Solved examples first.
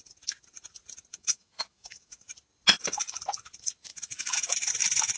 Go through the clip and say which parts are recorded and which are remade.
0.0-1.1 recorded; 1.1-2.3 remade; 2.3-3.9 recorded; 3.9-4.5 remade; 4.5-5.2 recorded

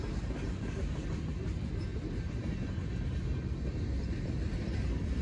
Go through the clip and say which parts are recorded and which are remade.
0.0-5.2 recorded